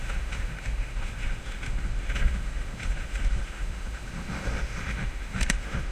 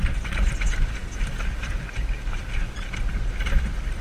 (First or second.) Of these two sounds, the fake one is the first